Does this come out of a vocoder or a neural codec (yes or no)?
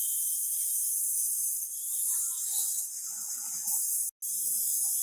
no